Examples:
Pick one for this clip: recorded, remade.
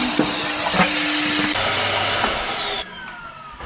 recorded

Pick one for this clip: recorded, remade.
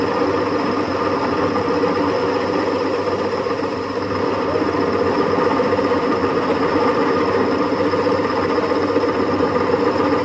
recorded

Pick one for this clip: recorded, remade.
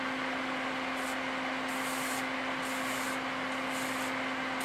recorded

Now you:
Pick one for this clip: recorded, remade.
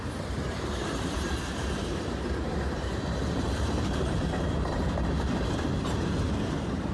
remade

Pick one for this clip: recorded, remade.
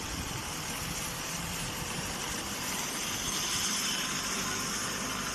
remade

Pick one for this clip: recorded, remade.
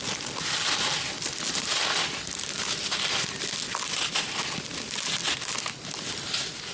recorded